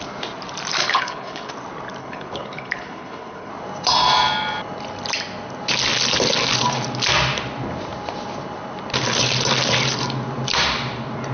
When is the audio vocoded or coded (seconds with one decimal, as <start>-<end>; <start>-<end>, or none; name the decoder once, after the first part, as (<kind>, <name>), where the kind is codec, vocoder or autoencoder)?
0.8-1.5 (codec, HILCodec); 2.0-3.5